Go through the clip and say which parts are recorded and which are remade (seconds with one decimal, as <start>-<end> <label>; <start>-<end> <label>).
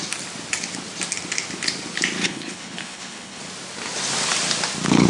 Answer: 0.0-2.2 recorded; 2.2-3.4 remade; 3.4-5.1 recorded